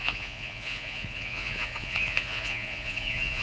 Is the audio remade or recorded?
remade